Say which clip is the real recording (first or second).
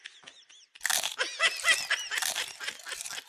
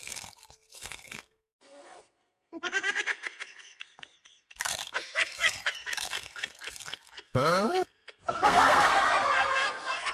first